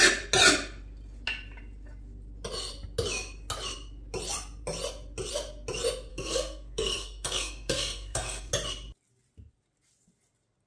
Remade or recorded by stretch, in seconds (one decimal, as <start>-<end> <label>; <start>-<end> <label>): 0.0-6.1 recorded; 6.1-8.5 remade; 8.5-10.7 recorded